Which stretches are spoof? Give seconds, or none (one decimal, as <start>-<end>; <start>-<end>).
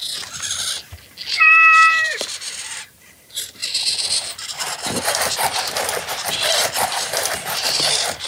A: 1.4-3.6; 6.1-8.3